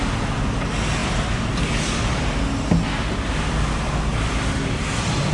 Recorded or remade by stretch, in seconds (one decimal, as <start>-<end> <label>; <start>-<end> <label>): 0.0-5.3 recorded